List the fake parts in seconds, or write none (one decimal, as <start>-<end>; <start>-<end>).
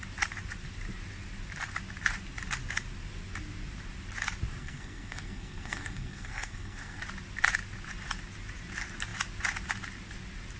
4.6-7.0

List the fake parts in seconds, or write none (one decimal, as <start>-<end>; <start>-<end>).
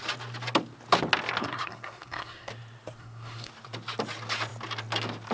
1.4-2.5; 3.0-3.5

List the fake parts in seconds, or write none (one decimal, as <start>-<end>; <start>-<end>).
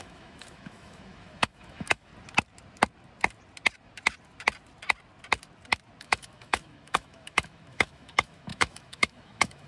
0.0-2.1; 6.0-9.7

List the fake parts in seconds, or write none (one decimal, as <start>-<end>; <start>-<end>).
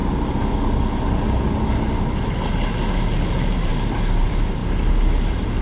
3.4-4.6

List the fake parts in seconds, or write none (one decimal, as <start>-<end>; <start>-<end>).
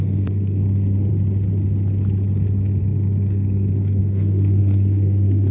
0.0-1.1; 2.8-5.5